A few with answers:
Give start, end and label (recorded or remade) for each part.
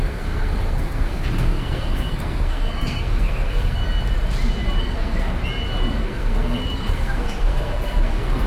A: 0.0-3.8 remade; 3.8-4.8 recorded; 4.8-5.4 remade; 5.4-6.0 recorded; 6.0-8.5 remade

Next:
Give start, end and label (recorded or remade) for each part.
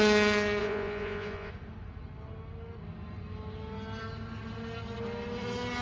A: 0.0-0.6 recorded; 0.6-1.5 remade; 1.5-5.8 recorded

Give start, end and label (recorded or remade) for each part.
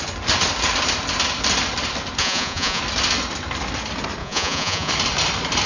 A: 0.0-2.2 recorded; 2.2-2.8 remade; 2.8-4.2 recorded; 4.2-4.9 remade; 4.9-5.7 recorded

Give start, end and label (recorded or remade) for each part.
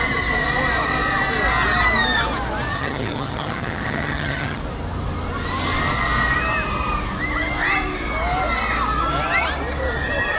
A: 0.0-2.7 recorded; 2.7-4.6 remade; 4.6-10.4 recorded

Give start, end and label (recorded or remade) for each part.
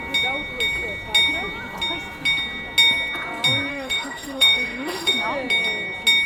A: 0.0-3.7 recorded; 3.7-5.2 remade; 5.2-6.3 recorded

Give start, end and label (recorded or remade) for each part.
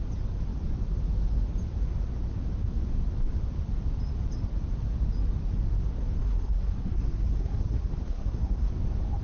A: 0.0-6.2 recorded; 6.2-8.7 remade; 8.7-9.2 recorded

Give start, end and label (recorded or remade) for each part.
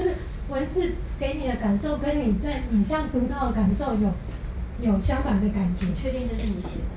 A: 0.0-7.0 recorded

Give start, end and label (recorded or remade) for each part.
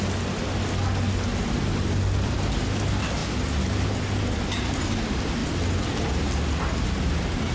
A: 0.0-7.5 recorded